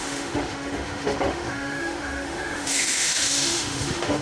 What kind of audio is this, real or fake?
fake